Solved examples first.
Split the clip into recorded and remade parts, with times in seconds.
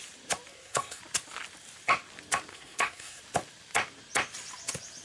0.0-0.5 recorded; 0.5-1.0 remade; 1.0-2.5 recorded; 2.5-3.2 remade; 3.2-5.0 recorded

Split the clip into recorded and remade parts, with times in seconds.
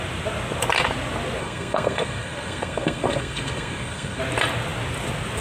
0.0-1.4 recorded; 1.4-4.2 remade; 4.2-5.4 recorded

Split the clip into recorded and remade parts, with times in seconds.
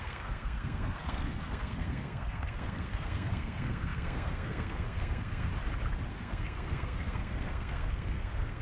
0.0-5.5 remade; 5.5-6.1 recorded; 6.1-8.6 remade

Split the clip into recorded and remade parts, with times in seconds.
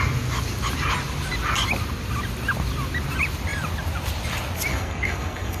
0.0-4.7 recorded; 4.7-5.6 remade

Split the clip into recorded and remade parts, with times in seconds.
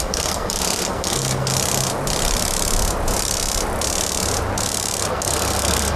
0.0-1.5 remade; 1.5-5.1 recorded; 5.1-6.0 remade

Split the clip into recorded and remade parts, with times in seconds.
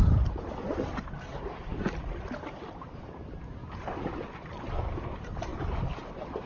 0.0-6.5 recorded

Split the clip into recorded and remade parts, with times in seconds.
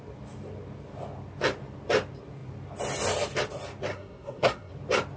0.0-3.9 recorded; 3.9-4.7 remade; 4.7-5.2 recorded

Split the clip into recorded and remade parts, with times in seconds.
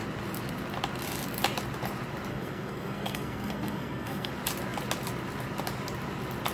0.0-2.3 recorded; 2.3-4.3 remade; 4.3-6.5 recorded